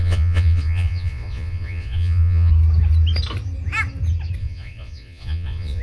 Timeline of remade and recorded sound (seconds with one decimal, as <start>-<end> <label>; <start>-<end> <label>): 0.0-2.5 remade; 2.5-4.4 recorded; 4.4-5.8 remade